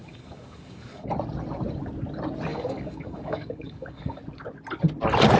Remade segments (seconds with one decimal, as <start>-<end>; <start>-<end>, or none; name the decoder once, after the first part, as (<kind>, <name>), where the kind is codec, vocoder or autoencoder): 0.0-1.1 (codec, DAC); 2.5-4.2